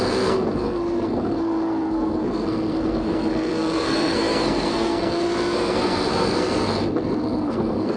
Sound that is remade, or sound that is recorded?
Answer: remade